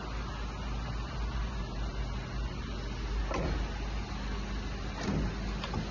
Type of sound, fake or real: real